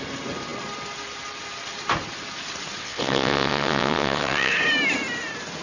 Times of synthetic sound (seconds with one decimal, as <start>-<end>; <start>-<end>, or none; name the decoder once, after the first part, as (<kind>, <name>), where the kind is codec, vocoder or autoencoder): 2.8-4.5 (vocoder, WaveNeXt)

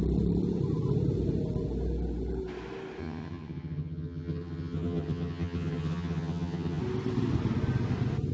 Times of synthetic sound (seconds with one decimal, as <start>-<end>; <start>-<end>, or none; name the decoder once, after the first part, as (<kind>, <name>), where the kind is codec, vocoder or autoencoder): 3.0-6.8 (vocoder, HiFi-GAN)